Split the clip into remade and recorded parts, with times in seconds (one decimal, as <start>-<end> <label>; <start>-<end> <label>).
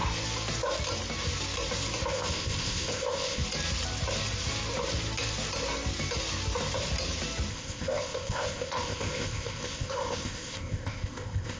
0.0-2.1 recorded; 2.1-3.4 remade; 3.4-7.5 recorded; 7.5-11.6 remade